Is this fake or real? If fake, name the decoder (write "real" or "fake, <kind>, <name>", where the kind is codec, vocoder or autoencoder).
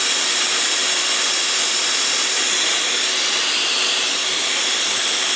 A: real